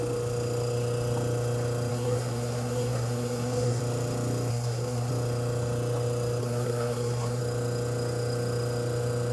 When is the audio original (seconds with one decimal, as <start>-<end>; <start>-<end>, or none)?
0.0-1.9; 3.8-4.5; 5.1-6.4; 7.4-9.3